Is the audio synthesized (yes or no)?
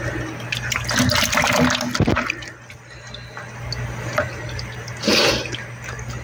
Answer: no